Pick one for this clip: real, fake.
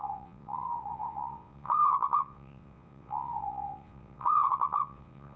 fake